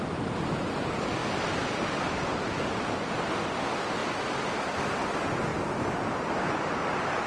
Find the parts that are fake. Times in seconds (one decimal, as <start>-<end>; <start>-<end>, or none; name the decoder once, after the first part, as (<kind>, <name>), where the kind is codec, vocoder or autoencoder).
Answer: none